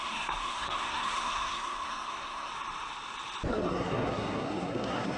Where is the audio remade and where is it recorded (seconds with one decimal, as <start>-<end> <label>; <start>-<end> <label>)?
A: 0.0-2.5 remade; 2.5-3.5 recorded; 3.5-5.2 remade